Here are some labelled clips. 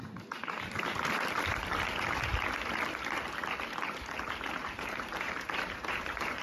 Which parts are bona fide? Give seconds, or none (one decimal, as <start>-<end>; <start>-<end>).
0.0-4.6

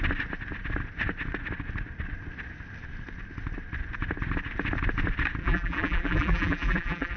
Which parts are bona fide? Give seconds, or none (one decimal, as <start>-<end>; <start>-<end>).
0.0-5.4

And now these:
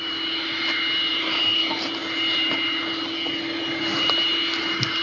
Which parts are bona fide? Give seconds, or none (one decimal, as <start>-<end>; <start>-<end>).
0.0-1.1; 1.6-5.0